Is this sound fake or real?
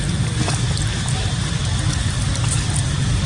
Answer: real